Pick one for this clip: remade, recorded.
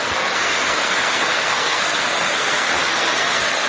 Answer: remade